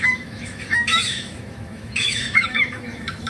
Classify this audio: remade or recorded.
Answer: remade